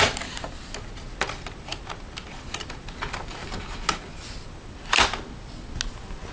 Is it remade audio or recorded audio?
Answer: recorded